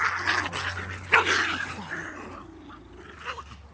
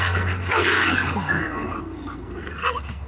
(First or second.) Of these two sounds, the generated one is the second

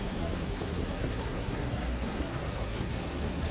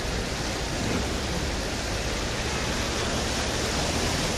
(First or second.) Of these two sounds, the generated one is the first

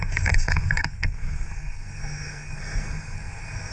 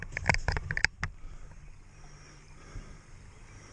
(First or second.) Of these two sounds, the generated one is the first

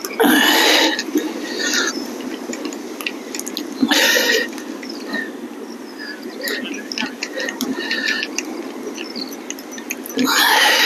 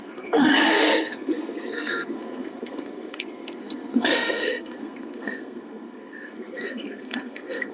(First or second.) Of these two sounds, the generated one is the second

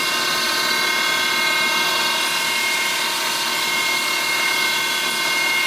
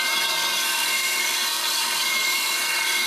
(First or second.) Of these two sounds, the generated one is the second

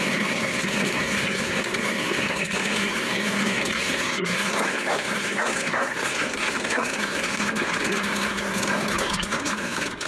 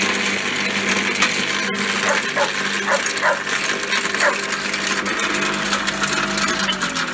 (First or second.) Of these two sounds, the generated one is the first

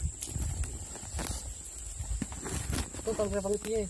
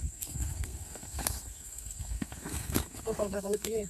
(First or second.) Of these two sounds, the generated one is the second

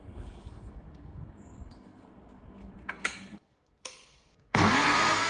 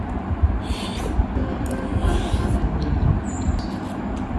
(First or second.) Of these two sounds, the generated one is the first